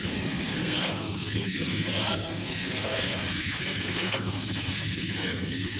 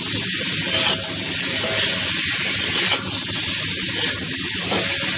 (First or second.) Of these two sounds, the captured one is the second